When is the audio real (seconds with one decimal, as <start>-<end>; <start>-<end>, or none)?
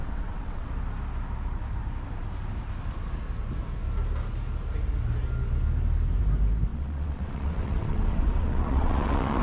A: 0.7-6.7